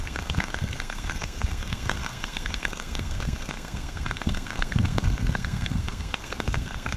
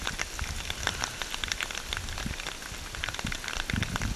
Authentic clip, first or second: second